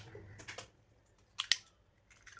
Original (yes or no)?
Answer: yes